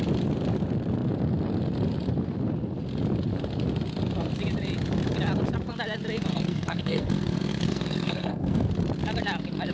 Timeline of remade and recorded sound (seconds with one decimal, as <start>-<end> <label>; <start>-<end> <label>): 0.0-6.3 recorded; 6.3-8.7 remade; 8.7-9.7 recorded